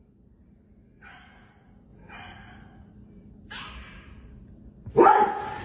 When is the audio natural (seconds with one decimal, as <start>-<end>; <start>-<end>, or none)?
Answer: 0.0-5.6